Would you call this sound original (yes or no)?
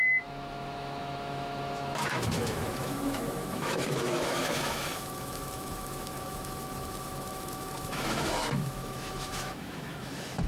no